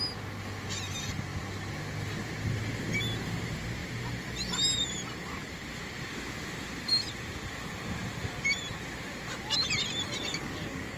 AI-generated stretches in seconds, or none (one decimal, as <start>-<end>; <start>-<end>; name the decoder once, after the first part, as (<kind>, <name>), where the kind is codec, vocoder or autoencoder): 10.3-11.0 (codec, DAC)